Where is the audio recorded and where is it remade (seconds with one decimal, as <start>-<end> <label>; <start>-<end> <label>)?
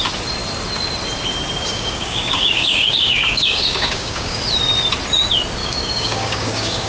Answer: 0.0-1.7 recorded; 1.7-4.4 remade; 4.4-5.6 recorded; 5.6-6.9 remade